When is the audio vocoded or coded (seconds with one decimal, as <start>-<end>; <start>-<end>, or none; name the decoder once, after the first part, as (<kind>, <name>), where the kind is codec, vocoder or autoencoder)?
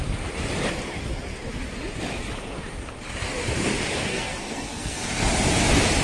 4.1-5.3 (codec, SNAC)